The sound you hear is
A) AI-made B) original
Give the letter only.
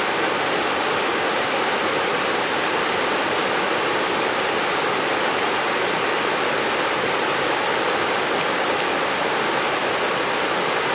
B